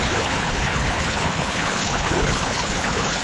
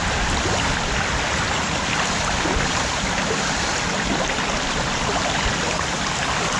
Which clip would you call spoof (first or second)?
first